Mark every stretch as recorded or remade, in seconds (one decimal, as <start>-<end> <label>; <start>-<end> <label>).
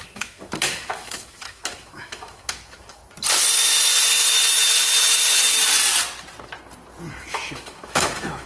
0.0-3.0 remade; 3.0-7.1 recorded; 7.1-8.5 remade